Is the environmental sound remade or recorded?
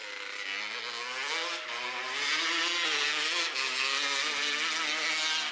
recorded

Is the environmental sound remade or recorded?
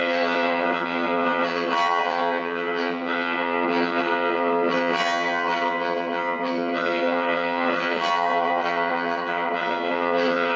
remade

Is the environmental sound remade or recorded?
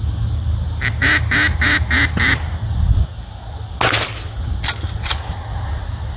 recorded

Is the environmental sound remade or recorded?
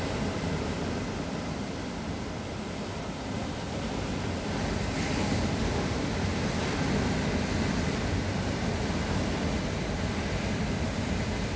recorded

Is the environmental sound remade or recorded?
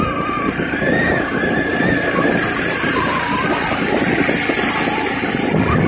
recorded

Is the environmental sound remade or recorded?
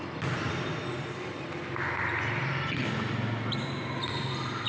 recorded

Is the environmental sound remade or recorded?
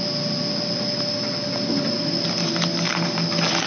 recorded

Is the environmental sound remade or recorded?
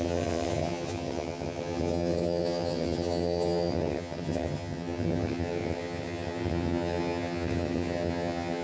remade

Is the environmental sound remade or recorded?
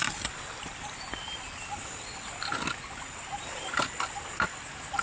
recorded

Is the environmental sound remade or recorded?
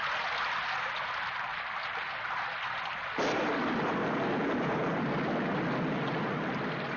recorded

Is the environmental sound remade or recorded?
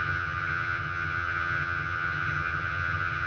remade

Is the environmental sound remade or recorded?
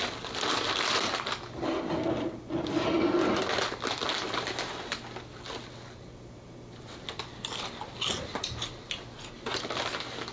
recorded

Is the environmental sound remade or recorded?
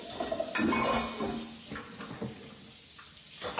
recorded